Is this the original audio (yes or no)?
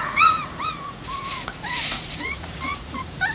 no